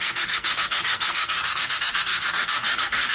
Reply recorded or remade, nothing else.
remade